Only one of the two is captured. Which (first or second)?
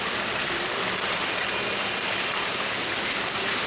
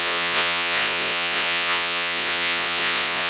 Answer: first